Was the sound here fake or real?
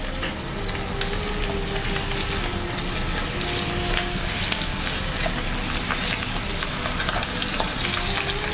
real